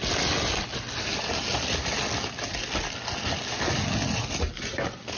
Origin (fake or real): real